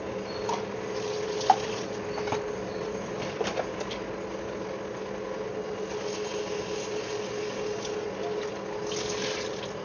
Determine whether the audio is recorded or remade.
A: recorded